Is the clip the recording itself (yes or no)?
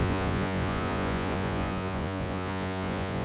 no